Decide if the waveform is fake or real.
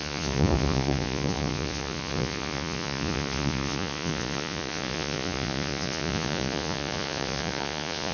fake